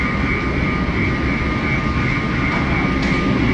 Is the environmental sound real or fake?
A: real